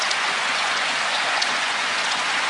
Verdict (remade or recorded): remade